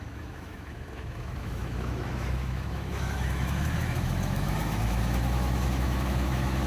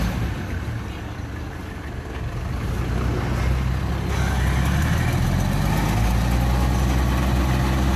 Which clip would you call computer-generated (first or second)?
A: first